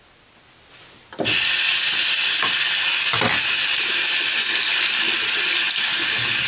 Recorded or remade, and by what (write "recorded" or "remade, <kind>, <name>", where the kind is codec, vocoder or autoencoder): recorded